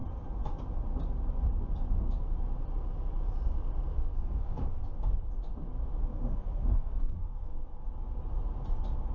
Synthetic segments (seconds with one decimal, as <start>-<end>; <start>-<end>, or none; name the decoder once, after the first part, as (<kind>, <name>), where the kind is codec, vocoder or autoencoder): 3.9-4.8 (codec, SNAC); 6.1-7.8